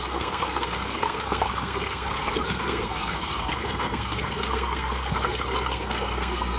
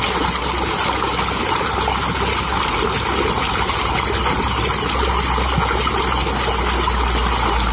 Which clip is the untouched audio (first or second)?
second